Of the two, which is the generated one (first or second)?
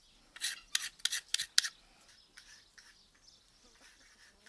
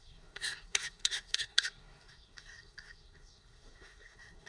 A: second